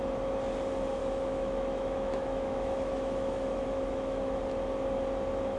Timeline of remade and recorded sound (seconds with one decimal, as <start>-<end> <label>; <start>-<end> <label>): 0.0-1.0 recorded; 1.0-4.4 remade; 4.4-5.6 recorded